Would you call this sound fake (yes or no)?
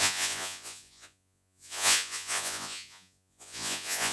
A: yes